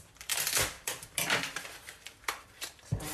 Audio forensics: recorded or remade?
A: remade